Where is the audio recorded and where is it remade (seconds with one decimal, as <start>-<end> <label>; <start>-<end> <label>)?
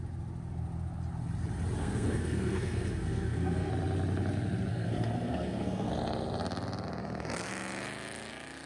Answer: 0.0-1.8 recorded; 1.8-3.7 remade; 3.7-4.7 recorded; 4.7-5.9 remade; 5.9-7.0 recorded; 7.0-7.5 remade; 7.5-8.7 recorded